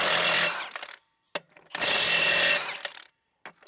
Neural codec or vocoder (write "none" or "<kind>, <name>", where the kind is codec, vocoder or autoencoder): none